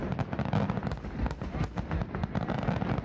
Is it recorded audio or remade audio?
recorded